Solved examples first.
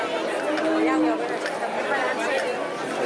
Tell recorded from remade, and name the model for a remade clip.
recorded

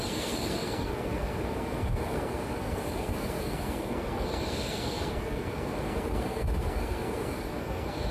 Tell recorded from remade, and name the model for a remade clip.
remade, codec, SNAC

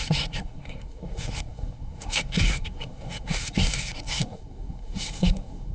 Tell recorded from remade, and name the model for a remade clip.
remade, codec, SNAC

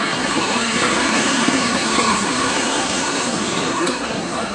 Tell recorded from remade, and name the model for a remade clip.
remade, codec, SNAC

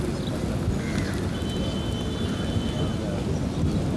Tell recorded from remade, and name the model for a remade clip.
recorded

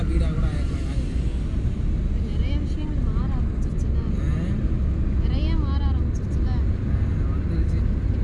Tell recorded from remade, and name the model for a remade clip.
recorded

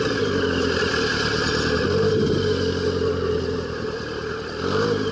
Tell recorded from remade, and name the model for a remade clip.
recorded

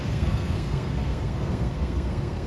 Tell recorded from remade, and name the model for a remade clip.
remade, codec, SNAC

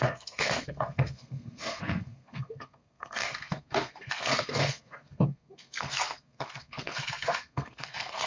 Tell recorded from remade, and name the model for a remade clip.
remade, codec, SNAC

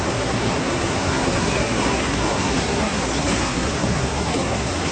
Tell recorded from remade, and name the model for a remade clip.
remade, codec, SNAC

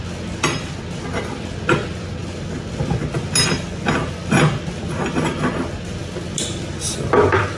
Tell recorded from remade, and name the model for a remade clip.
recorded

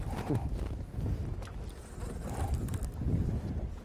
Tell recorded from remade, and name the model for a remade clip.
recorded